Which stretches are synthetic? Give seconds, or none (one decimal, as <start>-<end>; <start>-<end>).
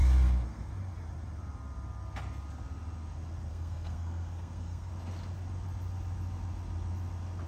0.0-0.7; 3.5-4.9